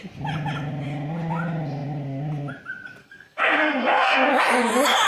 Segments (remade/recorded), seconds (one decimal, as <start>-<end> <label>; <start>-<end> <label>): 0.0-3.0 recorded; 3.0-4.3 remade; 4.3-5.1 recorded